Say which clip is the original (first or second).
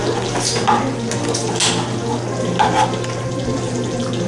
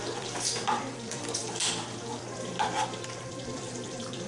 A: first